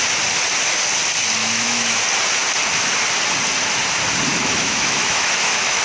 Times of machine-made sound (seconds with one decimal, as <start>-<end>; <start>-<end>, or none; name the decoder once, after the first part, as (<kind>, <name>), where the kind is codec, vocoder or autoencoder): 1.4-2.0 (autoencoder, DAC-VAE); 4.3-5.8